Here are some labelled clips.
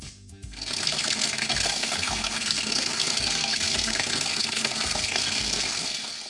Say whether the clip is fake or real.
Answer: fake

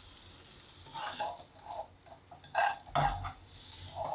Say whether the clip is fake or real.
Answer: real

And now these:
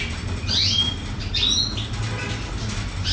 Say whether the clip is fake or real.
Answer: real